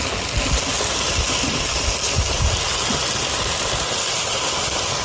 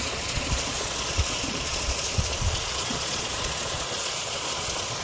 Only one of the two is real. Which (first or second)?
first